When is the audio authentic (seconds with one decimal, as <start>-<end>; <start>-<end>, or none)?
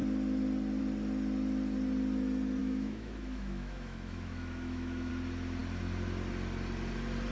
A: 0.0-2.6; 5.1-7.3